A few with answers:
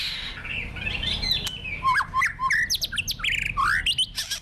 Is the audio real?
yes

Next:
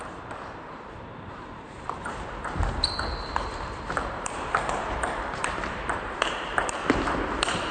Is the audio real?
no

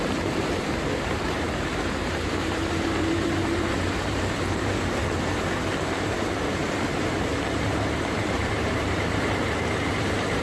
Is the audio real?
no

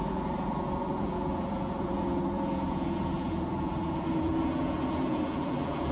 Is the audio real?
no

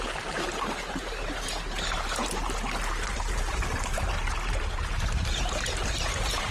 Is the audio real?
no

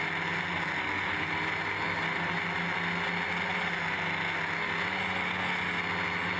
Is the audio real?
yes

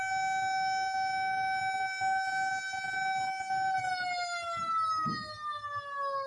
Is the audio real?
yes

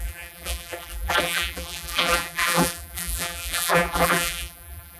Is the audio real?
no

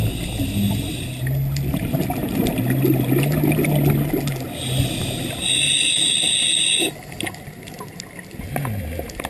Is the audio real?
yes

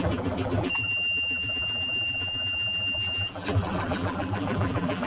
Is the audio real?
no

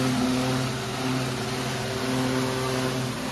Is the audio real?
yes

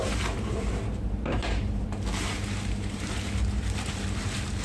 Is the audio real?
no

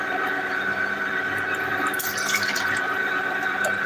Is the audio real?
no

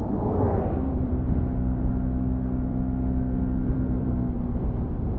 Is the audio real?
no